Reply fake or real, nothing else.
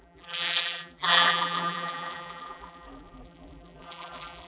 fake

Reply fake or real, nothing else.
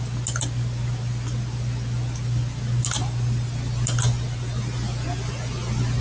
real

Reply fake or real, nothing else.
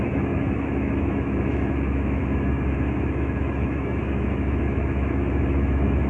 fake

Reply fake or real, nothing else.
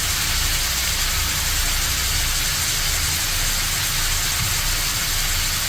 real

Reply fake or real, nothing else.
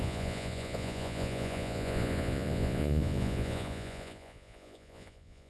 fake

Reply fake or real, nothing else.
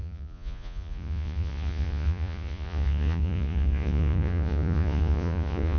fake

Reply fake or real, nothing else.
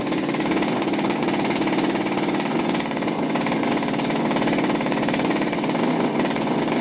fake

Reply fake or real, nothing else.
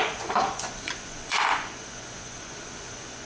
fake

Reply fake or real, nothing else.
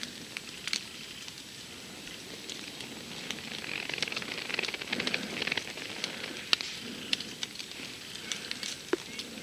real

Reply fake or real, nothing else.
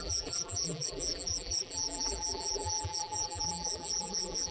fake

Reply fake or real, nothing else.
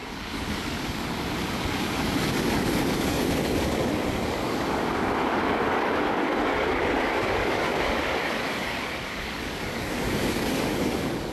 fake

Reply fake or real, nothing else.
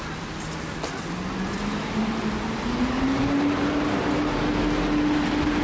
real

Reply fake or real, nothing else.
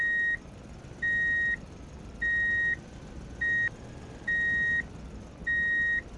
real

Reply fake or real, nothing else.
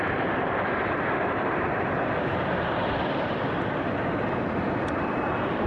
fake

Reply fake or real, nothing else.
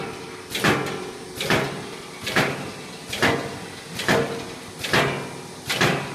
real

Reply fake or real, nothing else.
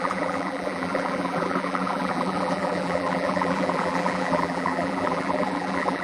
fake